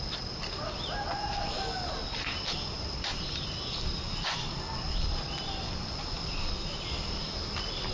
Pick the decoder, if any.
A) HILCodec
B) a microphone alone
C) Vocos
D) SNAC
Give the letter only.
B